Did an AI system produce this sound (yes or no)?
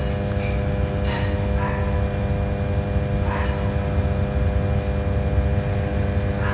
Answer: no